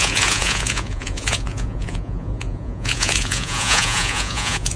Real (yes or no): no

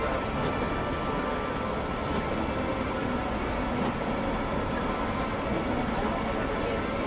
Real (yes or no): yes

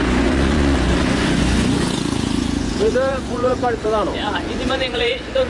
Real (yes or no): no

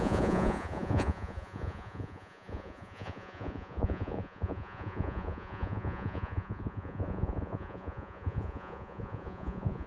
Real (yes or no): no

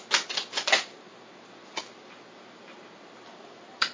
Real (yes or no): yes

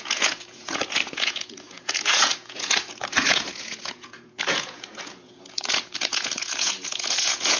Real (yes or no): no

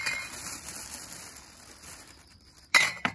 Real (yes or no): yes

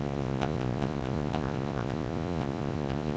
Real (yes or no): no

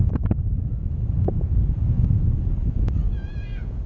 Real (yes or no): no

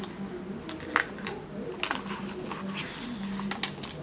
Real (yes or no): yes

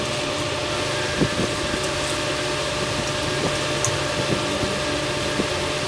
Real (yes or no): yes